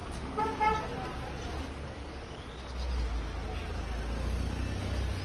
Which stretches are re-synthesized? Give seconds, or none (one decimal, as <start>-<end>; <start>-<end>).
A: none